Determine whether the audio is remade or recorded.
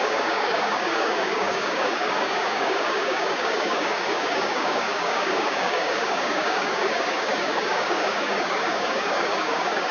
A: remade